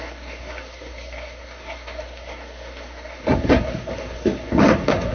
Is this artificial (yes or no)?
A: yes